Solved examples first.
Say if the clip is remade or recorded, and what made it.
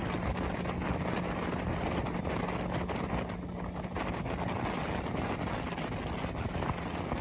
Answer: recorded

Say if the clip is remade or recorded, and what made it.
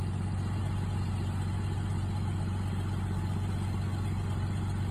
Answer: recorded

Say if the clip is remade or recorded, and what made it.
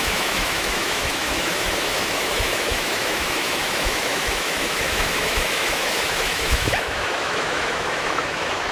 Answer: remade, autoencoder, DAC-VAE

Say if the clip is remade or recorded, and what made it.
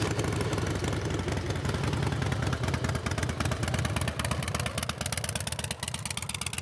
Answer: recorded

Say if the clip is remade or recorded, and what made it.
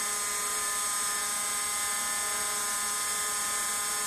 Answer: recorded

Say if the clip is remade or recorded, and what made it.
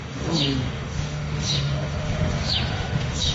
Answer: remade, autoencoder, DAC-VAE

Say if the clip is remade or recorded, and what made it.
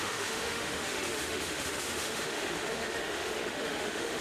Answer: remade, autoencoder, DAC-VAE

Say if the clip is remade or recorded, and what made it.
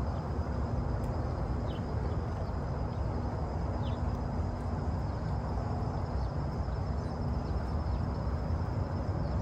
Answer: recorded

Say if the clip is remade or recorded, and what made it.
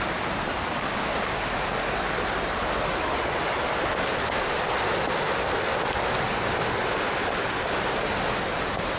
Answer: recorded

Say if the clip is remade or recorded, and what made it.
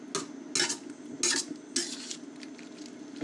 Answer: recorded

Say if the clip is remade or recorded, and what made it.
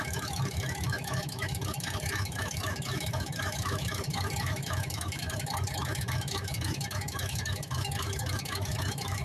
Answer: remade, autoencoder, DAC-VAE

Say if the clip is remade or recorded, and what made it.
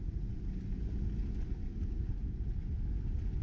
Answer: recorded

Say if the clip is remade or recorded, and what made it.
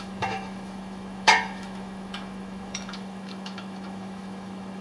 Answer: remade, autoencoder, DAC-VAE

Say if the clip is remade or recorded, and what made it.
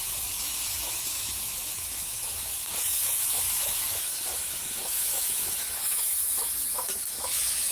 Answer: remade, autoencoder, DAC-VAE